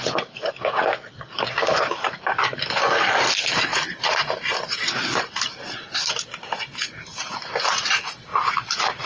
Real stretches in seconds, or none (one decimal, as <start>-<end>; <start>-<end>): 0.0-3.7; 6.9-8.3